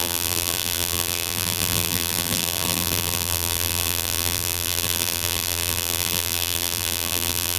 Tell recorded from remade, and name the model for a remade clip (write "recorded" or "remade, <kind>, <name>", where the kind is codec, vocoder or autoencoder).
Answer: remade, vocoder, BigVGAN v2